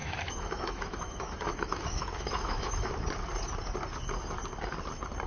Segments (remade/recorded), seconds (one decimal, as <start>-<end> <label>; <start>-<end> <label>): 0.0-2.9 remade; 2.9-5.3 recorded